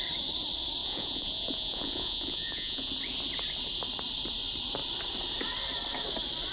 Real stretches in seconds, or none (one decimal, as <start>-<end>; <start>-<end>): 0.0-0.8; 2.9-6.5